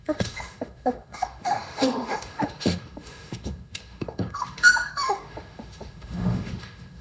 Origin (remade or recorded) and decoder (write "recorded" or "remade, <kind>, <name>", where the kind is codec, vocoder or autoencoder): remade, autoencoder, DAC-VAE